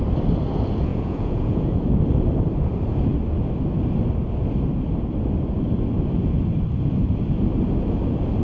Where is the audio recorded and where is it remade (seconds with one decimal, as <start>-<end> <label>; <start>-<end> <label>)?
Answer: 0.0-0.9 recorded; 0.9-2.0 remade; 2.0-8.4 recorded